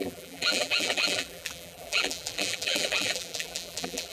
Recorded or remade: remade